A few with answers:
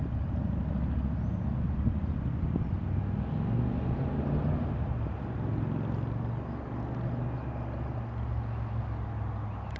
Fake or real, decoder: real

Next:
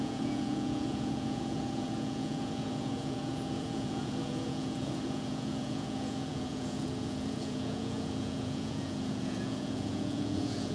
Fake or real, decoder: fake, vocoder, Vocos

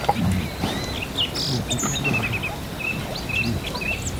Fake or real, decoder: real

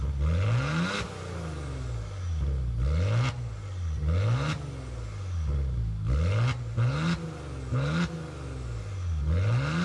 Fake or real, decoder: real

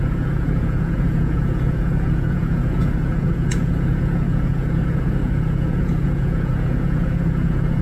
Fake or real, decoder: fake, vocoder, Vocos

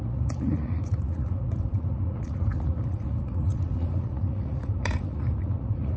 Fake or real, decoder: fake, vocoder, Vocos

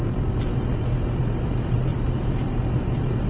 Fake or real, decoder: real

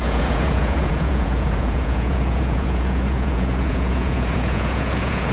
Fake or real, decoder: fake, vocoder, Vocos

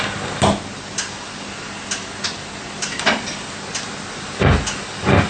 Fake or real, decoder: real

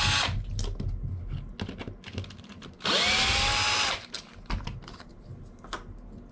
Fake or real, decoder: real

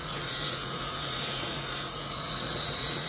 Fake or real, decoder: fake, vocoder, Vocos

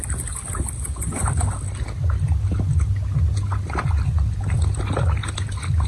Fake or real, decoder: real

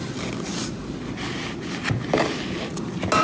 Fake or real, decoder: real